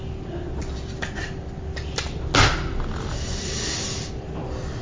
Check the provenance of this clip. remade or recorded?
recorded